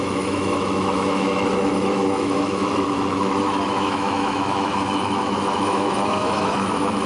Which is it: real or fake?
fake